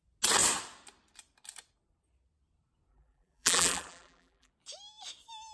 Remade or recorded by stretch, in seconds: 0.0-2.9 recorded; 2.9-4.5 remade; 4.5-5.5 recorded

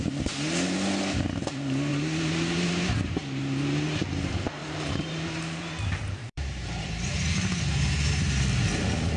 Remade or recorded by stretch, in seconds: 0.0-1.9 recorded; 1.9-3.4 remade; 3.4-4.6 recorded; 4.6-7.6 remade; 7.6-9.2 recorded

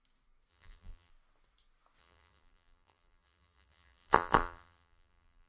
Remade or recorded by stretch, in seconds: 0.0-0.5 recorded; 0.5-1.1 remade; 1.1-2.0 recorded; 2.0-5.5 remade

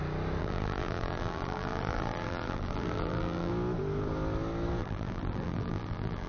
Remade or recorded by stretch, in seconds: 0.0-0.4 recorded; 0.4-3.5 remade; 3.5-4.8 recorded; 4.8-6.3 remade

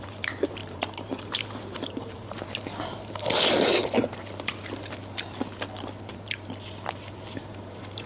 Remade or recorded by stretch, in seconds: 0.0-3.8 remade; 3.8-7.4 recorded; 7.4-8.1 remade

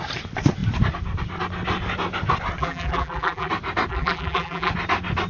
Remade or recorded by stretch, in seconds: 0.0-2.6 recorded; 2.6-3.5 remade; 3.5-3.9 recorded; 3.9-4.7 remade; 4.7-5.3 recorded

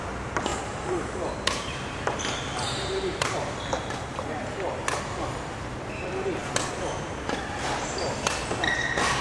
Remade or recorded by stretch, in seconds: 0.0-0.5 recorded; 0.5-5.0 remade; 5.0-9.2 recorded

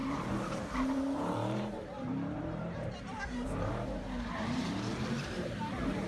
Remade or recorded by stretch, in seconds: 0.0-3.7 remade; 3.7-4.4 recorded; 4.4-6.1 remade